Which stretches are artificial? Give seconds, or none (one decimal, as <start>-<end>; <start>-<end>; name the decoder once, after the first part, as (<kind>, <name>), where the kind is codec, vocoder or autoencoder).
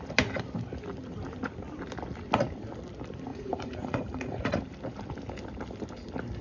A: 3.3-4.6 (vocoder, Vocos)